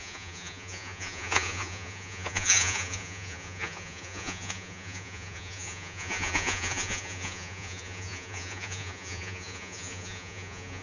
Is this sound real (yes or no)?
no